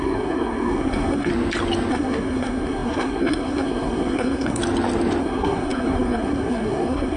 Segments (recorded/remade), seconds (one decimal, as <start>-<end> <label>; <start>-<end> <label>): 0.0-1.3 remade; 1.3-1.9 recorded; 1.9-4.6 remade; 4.6-5.2 recorded; 5.2-7.2 remade